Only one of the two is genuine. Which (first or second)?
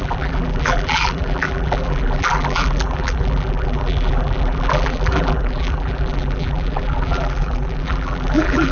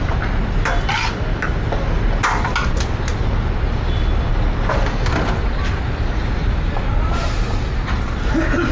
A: second